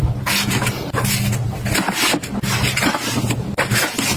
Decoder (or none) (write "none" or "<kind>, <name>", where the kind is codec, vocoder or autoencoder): none